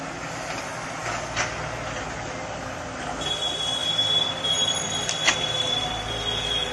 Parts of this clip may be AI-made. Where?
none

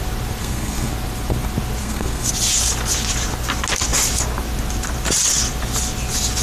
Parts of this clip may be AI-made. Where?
0.4-0.9; 1.8-2.3

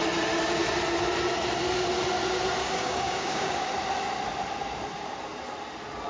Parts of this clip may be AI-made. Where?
2.6-3.7

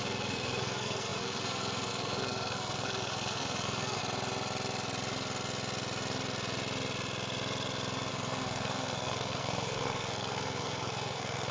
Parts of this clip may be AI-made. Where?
0.0-4.0; 8.1-11.5

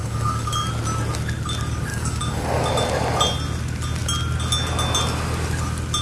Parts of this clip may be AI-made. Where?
0.0-0.7; 1.9-2.7